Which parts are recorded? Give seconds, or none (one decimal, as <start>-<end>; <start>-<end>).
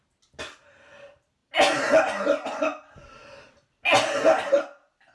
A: 0.0-5.1